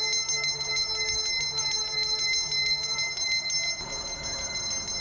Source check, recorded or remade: recorded